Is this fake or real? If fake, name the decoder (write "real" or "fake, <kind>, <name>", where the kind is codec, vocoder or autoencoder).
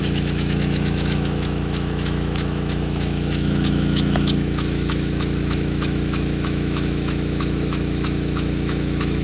fake, autoencoder, DAC-VAE